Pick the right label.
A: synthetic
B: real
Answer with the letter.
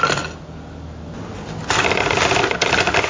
B